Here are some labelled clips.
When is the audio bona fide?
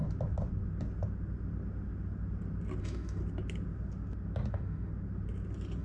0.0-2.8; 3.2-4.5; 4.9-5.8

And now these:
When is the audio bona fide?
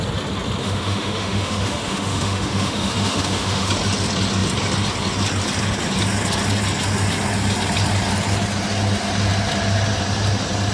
0.0-0.6; 3.7-10.7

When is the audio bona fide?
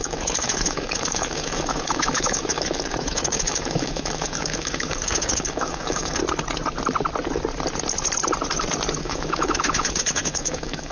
6.2-9.0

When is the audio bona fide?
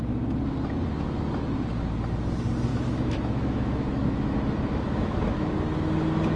0.0-2.7; 5.5-6.4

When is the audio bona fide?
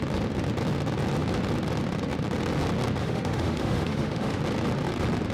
0.0-3.0; 4.4-5.3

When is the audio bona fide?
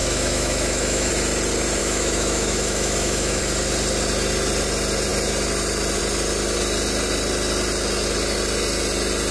1.1-1.8; 3.4-9.3